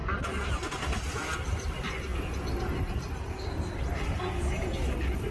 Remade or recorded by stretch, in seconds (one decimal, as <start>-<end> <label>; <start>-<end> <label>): 0.0-5.3 recorded